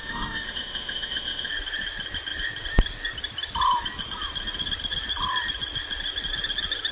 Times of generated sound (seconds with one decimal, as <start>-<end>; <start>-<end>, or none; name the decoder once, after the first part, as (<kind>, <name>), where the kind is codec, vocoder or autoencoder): 0.0-1.5 (autoencoder, DAC-VAE)